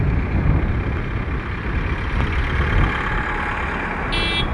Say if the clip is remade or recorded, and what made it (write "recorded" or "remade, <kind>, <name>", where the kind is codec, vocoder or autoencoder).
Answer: recorded